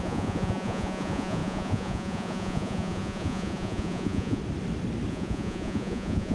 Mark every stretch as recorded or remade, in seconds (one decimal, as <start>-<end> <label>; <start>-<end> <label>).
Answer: 0.0-4.4 remade; 4.4-5.1 recorded; 5.1-6.3 remade